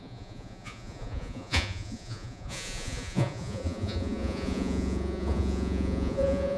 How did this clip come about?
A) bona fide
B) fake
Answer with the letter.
B